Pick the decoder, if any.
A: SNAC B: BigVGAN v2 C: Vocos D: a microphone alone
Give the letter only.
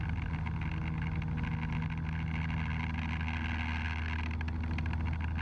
D